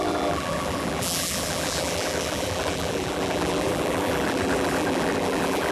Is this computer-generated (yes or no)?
yes